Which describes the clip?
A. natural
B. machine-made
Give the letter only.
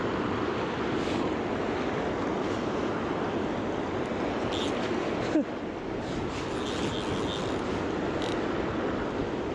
A